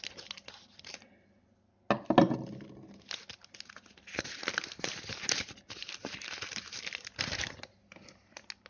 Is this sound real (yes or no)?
yes